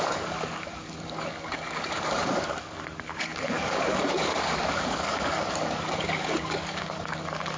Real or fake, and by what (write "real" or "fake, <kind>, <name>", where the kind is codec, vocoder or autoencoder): fake, codec, DAC